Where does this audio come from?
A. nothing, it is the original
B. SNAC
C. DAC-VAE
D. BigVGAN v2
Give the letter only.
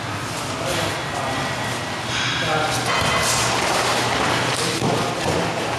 A